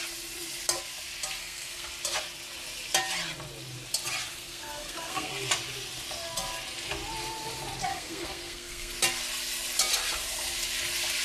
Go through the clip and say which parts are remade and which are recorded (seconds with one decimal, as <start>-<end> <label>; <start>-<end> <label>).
0.0-1.4 recorded; 1.4-1.9 remade; 1.9-4.3 recorded; 4.3-5.3 remade; 5.3-7.9 recorded; 7.9-8.9 remade; 8.9-11.2 recorded